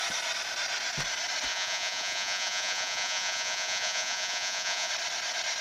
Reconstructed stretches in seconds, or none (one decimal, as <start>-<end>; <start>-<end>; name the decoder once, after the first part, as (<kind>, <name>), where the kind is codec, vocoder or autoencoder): 1.5-4.9 (vocoder, Vocos)